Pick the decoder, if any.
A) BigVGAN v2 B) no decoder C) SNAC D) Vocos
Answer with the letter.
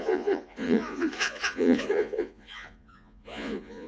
D